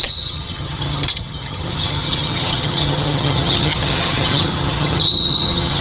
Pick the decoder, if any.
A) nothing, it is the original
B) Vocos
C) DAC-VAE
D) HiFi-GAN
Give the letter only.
D